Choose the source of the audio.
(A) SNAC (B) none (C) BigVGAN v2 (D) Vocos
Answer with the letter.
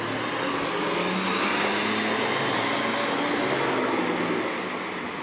B